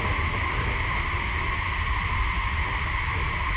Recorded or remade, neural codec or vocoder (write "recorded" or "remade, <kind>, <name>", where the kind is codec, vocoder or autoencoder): recorded